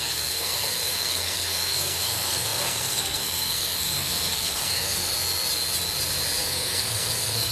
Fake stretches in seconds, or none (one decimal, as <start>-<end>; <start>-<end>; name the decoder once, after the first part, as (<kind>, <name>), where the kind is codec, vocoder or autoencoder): 0.0-5.1 (codec, SNAC); 6.4-7.5